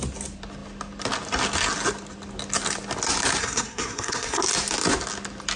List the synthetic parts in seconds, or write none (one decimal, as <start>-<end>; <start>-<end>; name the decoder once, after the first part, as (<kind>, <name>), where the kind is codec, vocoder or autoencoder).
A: 3.4-4.4 (codec, SNAC)

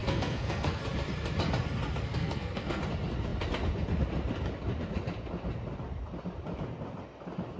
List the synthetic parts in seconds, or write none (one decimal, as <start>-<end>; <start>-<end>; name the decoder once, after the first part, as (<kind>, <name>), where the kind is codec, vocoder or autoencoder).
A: 0.0-0.8 (codec, SNAC); 2.2-2.8

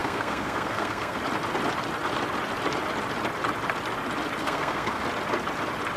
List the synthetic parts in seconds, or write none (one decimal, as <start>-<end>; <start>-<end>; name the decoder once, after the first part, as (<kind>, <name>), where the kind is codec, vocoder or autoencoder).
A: 0.0-1.2 (codec, SNAC); 4.4-5.0

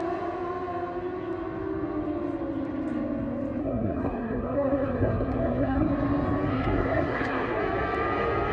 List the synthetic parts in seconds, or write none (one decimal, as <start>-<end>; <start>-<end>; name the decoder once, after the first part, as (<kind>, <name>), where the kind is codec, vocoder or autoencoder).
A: 3.6-5.9 (codec, SNAC); 6.5-7.6

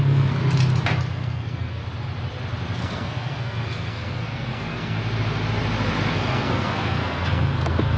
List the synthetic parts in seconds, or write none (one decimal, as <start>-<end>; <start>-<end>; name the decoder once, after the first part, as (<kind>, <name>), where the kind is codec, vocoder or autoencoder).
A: 0.0-0.4 (codec, SNAC); 1.1-1.8; 2.8-5.0; 6.1-8.0

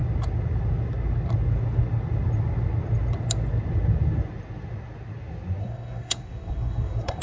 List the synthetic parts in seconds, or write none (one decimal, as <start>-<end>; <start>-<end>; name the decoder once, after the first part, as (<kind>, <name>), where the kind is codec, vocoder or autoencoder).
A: 5.6-7.2 (codec, SNAC)